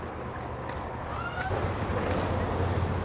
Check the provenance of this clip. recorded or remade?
recorded